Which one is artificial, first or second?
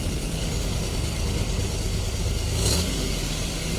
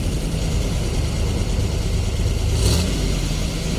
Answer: first